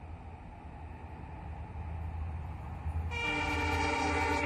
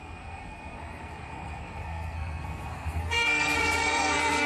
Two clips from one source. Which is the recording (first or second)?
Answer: first